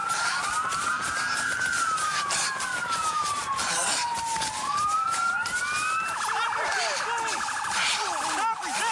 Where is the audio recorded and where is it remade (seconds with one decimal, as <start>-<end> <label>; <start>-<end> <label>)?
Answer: 0.0-1.4 remade; 1.4-2.8 recorded; 2.8-5.6 remade; 5.6-8.9 recorded